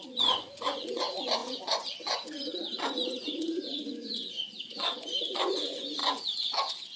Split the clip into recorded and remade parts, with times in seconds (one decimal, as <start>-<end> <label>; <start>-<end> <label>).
0.0-7.0 remade

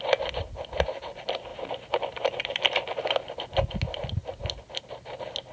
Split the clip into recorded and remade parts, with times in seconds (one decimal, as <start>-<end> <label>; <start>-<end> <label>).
0.0-5.5 recorded

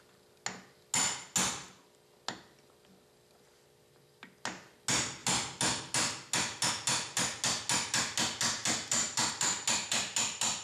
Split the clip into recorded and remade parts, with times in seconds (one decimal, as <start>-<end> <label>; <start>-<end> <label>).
0.0-10.6 recorded

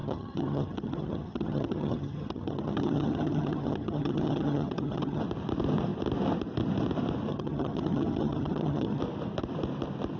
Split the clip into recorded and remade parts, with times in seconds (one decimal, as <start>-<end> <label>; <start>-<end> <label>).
0.0-5.2 remade; 5.2-7.3 recorded; 7.3-9.0 remade; 9.0-10.2 recorded

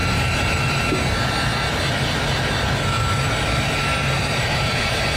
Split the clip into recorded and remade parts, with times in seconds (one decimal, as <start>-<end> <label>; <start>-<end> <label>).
0.0-0.8 remade; 0.8-3.9 recorded; 3.9-4.8 remade; 4.8-5.2 recorded